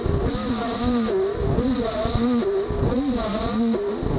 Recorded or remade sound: recorded